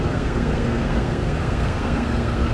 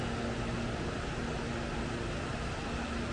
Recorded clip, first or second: second